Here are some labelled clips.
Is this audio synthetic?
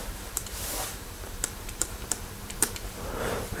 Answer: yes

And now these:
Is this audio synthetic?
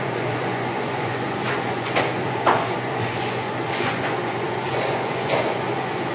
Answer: yes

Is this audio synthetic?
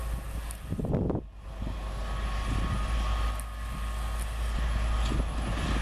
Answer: no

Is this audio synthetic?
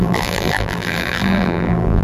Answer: yes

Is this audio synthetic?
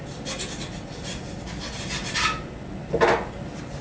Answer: no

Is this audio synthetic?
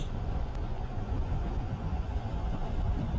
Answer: yes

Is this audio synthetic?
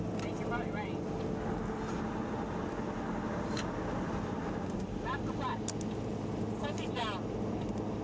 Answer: no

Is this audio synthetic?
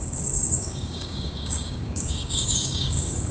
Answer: yes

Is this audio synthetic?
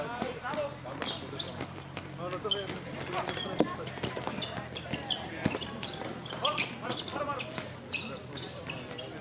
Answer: no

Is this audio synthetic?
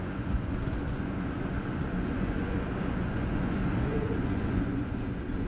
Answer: yes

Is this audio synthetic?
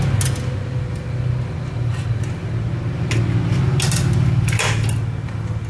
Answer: no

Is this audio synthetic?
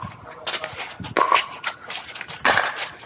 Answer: no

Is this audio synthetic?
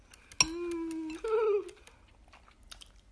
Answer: no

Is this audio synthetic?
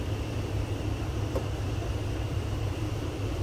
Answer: yes